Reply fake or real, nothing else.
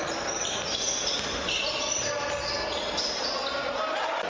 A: real